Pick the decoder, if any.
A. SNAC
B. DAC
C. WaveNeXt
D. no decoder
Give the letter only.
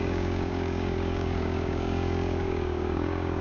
B